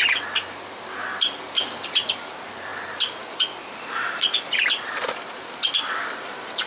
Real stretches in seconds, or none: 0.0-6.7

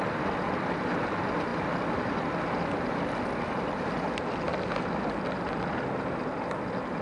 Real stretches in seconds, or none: 0.0-7.0